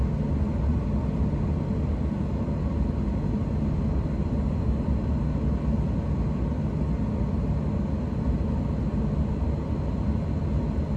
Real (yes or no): yes